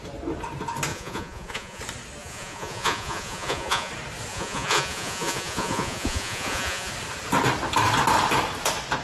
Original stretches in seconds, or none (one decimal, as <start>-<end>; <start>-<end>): 0.0-0.9; 1.8-2.2; 3.9-4.3; 6.9-9.0